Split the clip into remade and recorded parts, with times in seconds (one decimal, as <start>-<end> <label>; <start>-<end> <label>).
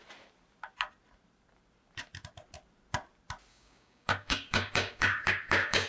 0.0-3.5 recorded; 3.5-5.9 remade